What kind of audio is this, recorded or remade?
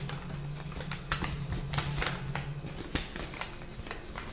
recorded